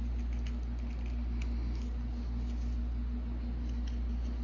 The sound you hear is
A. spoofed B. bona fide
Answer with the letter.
B